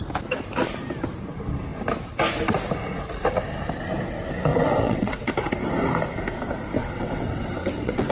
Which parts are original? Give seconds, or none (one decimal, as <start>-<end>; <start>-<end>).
0.0-4.5; 5.3-6.8